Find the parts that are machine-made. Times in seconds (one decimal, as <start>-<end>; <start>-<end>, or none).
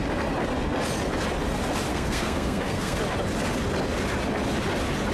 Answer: 1.9-3.0